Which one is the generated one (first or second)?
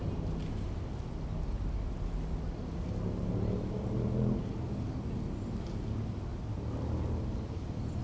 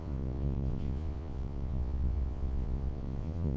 second